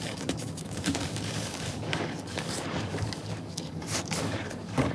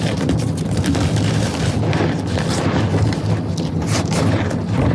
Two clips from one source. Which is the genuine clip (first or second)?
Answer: second